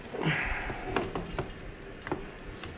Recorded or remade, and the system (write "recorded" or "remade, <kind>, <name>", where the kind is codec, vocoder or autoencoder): recorded